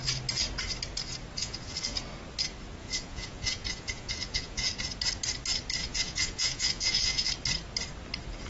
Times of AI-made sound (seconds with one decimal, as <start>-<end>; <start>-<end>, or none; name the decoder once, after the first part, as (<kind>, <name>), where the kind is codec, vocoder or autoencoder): 1.4-2.0 (vocoder, Vocos); 2.8-4.7; 5.8-7.3